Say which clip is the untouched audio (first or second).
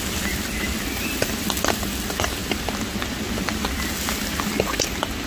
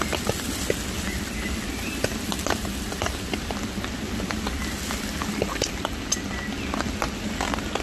first